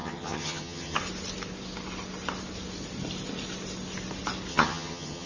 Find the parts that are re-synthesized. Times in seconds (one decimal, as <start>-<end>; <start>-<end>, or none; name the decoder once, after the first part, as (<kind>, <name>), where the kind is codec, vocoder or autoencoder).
0.0-1.0 (vocoder, HiFi-GAN); 4.5-5.3